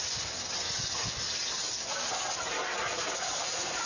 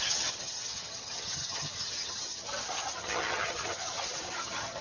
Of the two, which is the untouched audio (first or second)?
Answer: first